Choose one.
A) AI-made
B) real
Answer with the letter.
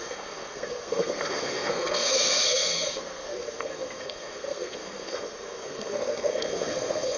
A